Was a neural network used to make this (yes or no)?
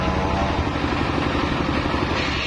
no